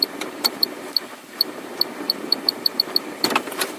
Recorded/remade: remade